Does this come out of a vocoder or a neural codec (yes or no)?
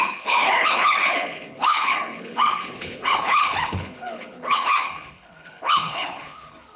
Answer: yes